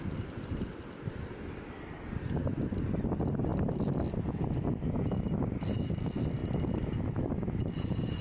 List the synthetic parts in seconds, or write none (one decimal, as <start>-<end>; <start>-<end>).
none